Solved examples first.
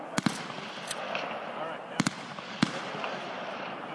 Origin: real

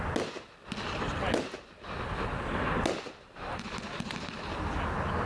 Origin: real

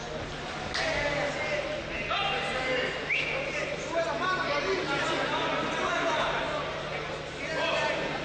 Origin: real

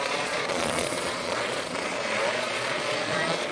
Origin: fake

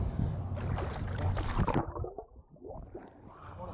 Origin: real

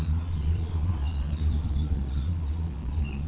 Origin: fake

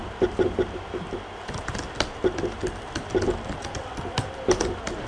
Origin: real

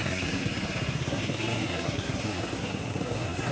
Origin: fake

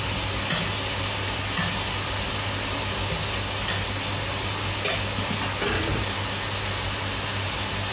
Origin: real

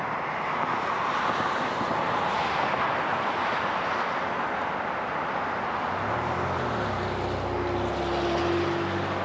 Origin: real